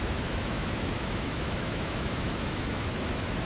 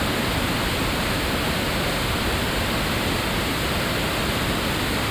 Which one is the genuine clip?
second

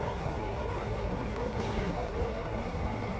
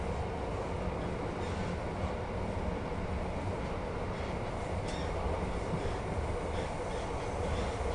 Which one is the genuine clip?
second